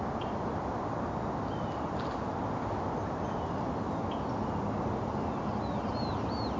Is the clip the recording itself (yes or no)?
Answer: yes